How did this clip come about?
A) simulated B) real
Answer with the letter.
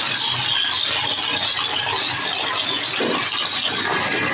B